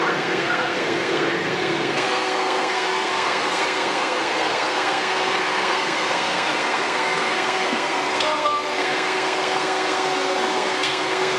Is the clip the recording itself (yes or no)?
no